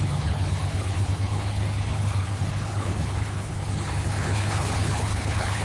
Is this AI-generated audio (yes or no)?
yes